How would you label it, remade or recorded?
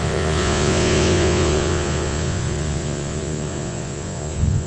remade